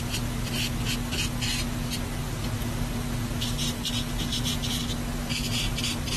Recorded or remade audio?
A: recorded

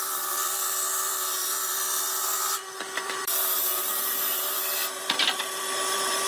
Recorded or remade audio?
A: remade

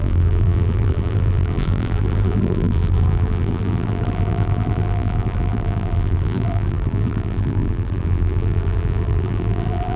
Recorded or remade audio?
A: remade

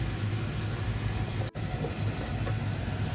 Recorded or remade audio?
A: recorded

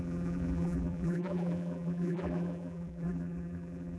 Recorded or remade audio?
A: remade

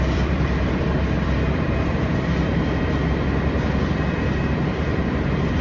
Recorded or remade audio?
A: remade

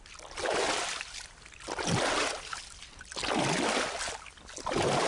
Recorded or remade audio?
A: recorded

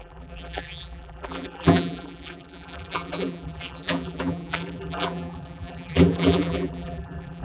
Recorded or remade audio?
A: remade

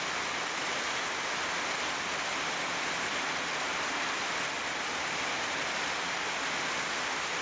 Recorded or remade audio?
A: recorded